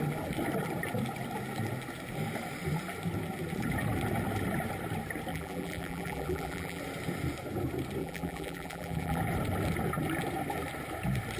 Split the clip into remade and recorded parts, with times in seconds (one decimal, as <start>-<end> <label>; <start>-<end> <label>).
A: 0.0-5.3 recorded; 5.3-6.8 remade; 6.8-8.0 recorded; 8.0-9.2 remade; 9.2-11.4 recorded